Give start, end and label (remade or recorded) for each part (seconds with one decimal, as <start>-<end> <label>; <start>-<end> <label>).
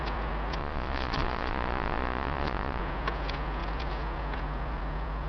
0.0-0.6 recorded; 0.6-2.8 remade; 2.8-5.3 recorded